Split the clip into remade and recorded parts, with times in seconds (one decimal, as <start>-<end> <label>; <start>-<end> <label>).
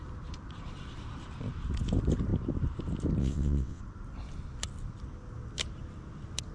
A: 0.0-3.2 recorded; 3.2-3.8 remade; 3.8-6.5 recorded